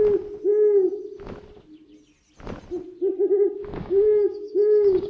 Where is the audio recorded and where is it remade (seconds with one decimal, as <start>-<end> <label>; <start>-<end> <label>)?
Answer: 0.0-3.8 recorded; 3.8-5.1 remade